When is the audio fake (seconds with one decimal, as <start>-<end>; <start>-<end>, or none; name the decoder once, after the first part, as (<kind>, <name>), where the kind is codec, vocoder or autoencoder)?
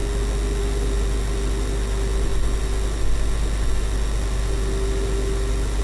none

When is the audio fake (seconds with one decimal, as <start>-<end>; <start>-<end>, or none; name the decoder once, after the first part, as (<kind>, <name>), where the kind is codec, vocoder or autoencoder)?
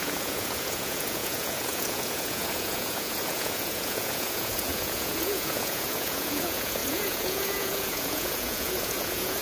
0.0-9.4 (vocoder, Vocos)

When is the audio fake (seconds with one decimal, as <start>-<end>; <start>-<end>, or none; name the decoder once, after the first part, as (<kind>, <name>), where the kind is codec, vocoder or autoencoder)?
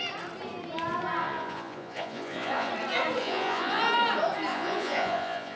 1.2-2.7 (vocoder, Vocos); 3.2-3.8; 4.5-5.6